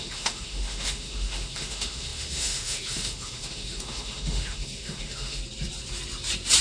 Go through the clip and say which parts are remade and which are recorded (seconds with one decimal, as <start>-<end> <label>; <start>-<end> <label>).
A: 0.0-5.4 remade; 5.4-6.6 recorded